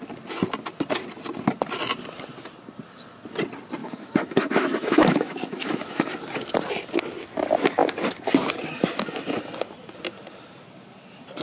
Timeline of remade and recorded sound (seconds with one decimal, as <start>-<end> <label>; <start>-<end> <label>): 0.0-3.8 recorded; 3.8-6.1 remade; 6.1-11.4 recorded